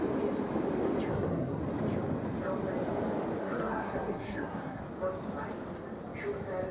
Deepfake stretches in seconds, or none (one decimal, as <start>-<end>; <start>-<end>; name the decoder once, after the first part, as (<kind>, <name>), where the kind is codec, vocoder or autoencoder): 1.1-1.6 (codec, SNAC); 3.4-4.8